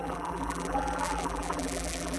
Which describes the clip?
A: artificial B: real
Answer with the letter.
A